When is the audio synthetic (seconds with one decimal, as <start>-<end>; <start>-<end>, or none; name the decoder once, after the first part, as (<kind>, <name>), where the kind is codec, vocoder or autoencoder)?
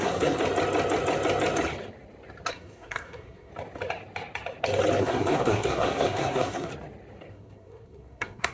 0.0-0.4 (codec, SNAC); 2.5-3.5; 5.0-6.7; 7.3-8.5